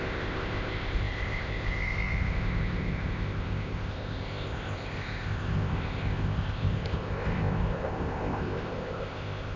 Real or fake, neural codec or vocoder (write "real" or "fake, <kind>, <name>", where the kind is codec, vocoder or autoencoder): fake, codec, ZipCodec